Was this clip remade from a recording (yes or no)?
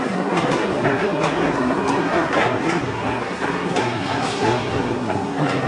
yes